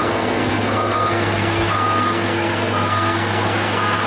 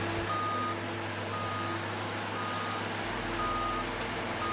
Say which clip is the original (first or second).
second